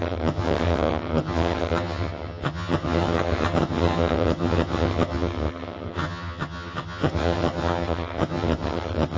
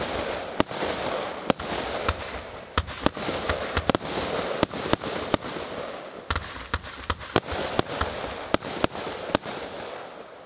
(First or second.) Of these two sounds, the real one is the second